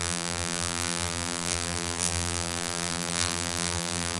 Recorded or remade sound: remade